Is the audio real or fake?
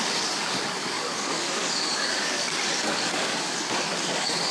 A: fake